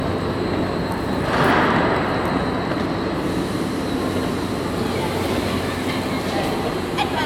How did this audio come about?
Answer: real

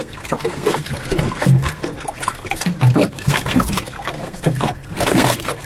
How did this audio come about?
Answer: fake